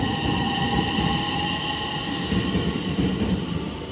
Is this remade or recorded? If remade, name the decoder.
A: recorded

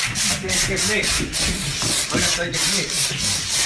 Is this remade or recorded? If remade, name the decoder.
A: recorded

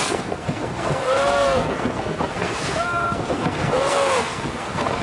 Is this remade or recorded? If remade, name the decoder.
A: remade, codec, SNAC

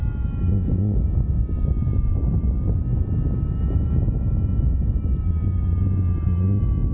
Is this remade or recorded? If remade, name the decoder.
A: recorded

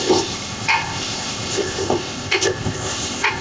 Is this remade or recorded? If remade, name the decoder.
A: remade, codec, ZipCodec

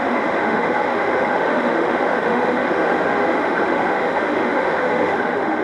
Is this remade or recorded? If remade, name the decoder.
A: remade, autoencoder, DAC-VAE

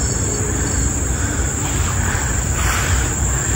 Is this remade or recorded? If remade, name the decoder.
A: remade, vocoder, BigVGAN v2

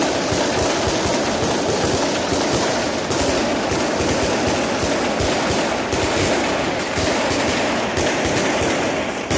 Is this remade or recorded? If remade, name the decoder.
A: recorded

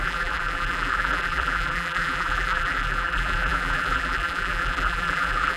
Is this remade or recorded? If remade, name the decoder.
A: remade, vocoder, BigVGAN v2